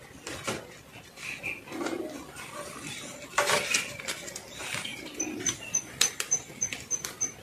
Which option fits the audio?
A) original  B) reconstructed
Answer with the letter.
A